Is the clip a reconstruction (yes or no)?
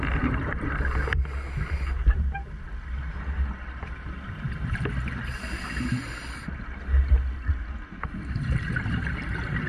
no